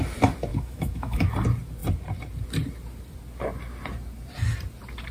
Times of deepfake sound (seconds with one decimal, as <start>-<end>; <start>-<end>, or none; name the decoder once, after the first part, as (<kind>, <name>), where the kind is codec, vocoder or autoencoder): 0.5-1.3 (autoencoder, DAC-VAE)

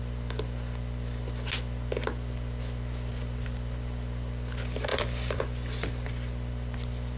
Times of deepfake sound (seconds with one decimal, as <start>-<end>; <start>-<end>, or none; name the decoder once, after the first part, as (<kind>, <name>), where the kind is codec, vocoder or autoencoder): 4.9-5.4 (vocoder, BigVGAN v2)

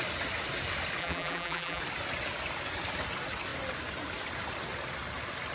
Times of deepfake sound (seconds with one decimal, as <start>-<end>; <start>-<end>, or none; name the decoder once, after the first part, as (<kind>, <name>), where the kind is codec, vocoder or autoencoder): 1.0-1.8 (vocoder, BigVGAN v2)

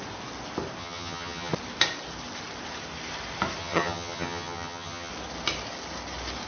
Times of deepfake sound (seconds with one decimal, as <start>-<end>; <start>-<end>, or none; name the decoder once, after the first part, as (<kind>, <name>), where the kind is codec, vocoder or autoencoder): 0.8-1.5 (vocoder, HiFi-GAN); 3.6-5.1